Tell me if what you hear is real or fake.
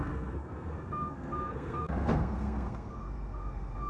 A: fake